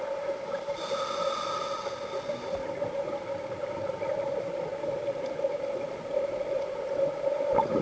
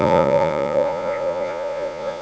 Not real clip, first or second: second